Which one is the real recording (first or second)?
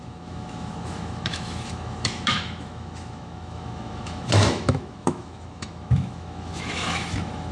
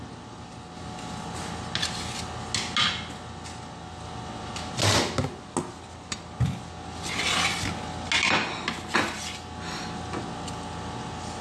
second